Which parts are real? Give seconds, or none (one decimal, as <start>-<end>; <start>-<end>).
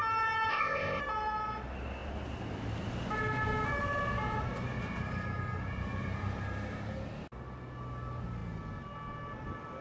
0.0-0.5; 1.0-9.8